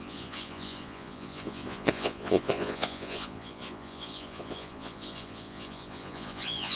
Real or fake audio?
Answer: fake